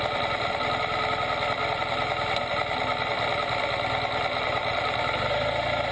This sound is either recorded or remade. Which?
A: recorded